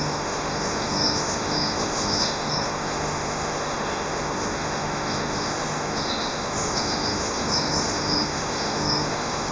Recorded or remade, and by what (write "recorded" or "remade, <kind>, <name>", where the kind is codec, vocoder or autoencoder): remade, autoencoder, DAC-VAE